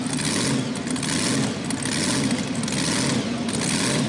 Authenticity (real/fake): real